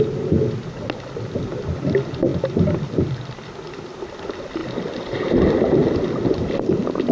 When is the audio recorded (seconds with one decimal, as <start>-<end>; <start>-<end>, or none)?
0.0-7.1